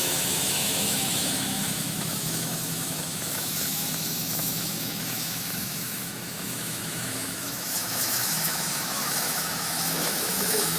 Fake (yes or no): yes